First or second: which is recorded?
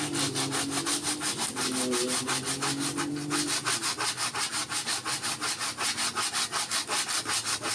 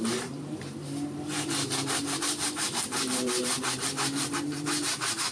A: first